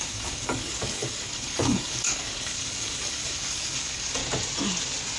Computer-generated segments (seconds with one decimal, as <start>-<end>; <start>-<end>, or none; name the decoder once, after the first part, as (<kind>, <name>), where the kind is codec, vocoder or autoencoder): 0.0-4.2 (codec, DAC)